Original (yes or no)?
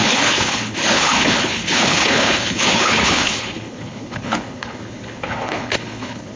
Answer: no